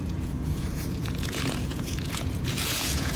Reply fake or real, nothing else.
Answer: fake